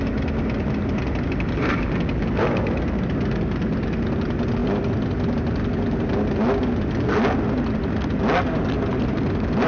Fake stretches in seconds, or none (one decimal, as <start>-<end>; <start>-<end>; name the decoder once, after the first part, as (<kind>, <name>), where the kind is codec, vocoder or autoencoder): none